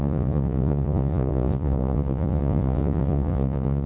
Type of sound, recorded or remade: remade